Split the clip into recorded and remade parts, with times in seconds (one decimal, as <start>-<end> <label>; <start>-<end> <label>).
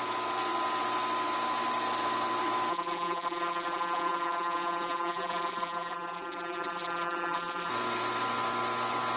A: 0.0-2.7 recorded; 2.7-7.7 remade; 7.7-9.2 recorded